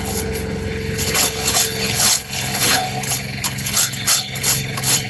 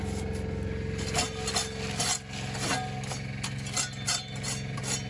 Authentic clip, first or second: second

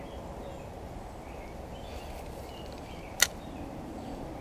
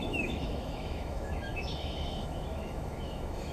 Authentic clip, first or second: first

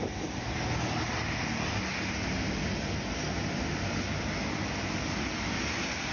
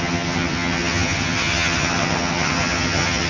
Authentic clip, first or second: first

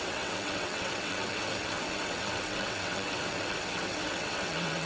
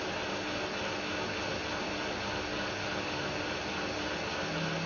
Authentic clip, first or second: second